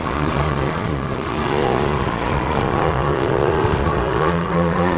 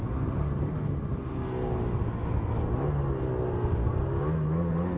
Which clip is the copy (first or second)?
first